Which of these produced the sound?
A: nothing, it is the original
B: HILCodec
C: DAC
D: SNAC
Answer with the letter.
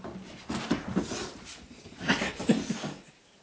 A